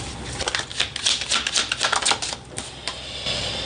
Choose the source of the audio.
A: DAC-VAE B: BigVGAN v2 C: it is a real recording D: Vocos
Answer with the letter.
C